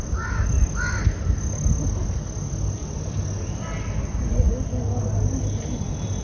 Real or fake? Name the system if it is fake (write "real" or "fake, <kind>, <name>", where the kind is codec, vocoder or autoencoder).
real